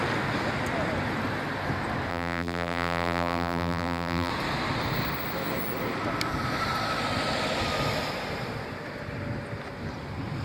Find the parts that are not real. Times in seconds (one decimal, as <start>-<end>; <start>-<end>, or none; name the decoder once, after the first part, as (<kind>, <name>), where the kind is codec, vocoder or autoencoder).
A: 2.1-4.3 (vocoder, BigVGAN v2)